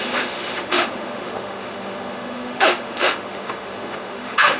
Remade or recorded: remade